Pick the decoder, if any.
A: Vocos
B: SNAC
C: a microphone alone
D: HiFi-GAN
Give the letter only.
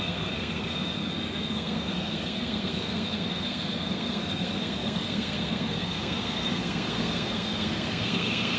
B